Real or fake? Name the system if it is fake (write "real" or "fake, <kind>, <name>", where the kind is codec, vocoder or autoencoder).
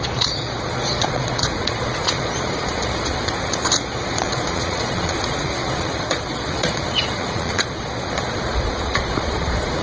fake, vocoder, Vocos